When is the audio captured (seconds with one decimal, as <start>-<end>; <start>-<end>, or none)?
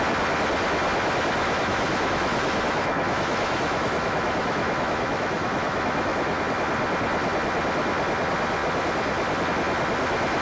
0.0-1.4; 6.4-10.4